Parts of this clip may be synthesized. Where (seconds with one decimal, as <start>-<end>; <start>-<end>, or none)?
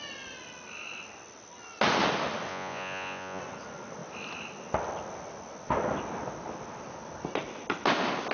2.5-3.4